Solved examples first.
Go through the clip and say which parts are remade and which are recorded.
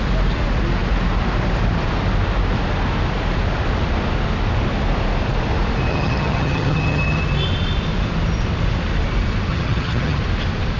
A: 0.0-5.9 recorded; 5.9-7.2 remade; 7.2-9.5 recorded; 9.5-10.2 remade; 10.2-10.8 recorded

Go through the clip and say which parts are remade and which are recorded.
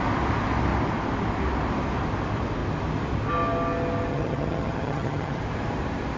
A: 0.0-4.1 recorded; 4.1-5.4 remade; 5.4-6.2 recorded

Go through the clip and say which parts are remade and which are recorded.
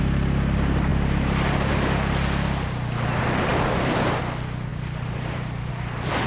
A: 0.0-0.9 recorded; 0.9-1.7 remade; 1.7-4.7 recorded; 4.7-5.7 remade; 5.7-6.3 recorded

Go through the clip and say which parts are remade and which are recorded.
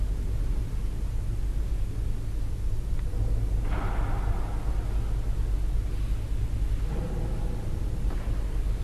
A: 0.0-8.8 recorded